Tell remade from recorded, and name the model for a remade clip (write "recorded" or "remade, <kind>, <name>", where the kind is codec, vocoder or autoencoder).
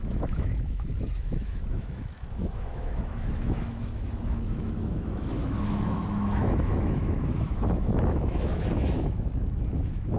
remade, autoencoder, DAC-VAE